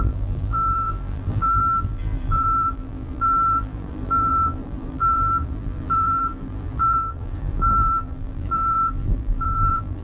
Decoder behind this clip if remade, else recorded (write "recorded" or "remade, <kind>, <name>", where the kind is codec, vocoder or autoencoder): remade, vocoder, BigVGAN v2